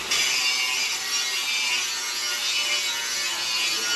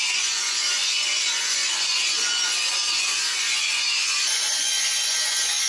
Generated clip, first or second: second